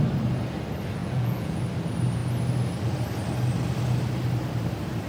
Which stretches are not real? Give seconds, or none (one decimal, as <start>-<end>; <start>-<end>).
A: 1.0-1.6